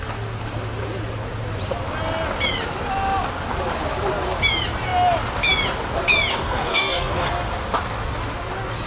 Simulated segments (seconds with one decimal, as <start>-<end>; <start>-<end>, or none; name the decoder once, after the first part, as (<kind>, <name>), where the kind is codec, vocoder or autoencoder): 6.3-7.3 (codec, DAC)